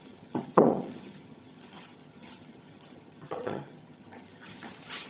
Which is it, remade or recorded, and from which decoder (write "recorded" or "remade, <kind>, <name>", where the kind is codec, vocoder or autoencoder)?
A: remade, vocoder, HiFi-GAN